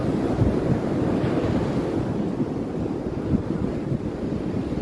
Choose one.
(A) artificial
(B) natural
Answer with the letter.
B